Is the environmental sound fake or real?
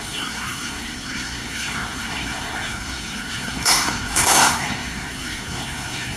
fake